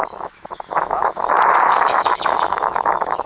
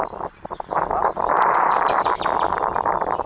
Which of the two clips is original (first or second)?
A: second